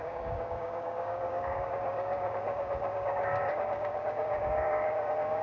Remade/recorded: remade